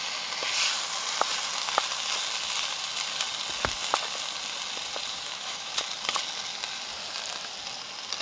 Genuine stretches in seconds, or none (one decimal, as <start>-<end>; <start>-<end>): 0.0-5.1; 5.7-8.2